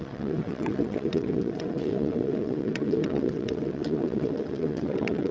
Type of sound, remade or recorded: remade